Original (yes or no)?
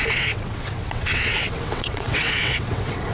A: no